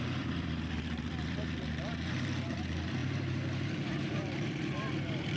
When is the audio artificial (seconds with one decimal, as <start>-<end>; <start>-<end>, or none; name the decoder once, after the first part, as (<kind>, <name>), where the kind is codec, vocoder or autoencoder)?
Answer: 0.0-5.4 (vocoder, BigVGAN v2)